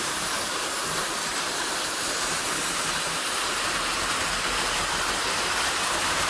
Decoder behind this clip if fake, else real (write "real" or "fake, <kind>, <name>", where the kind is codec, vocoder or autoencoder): fake, vocoder, BigVGAN v2